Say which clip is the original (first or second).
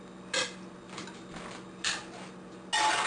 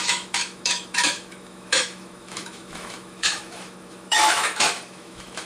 first